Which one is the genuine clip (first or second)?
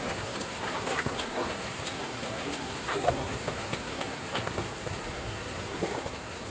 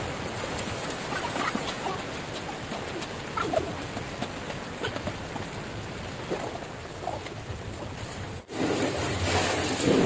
second